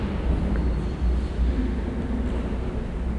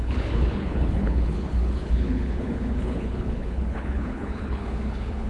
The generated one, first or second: second